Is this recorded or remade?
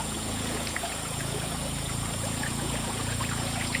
remade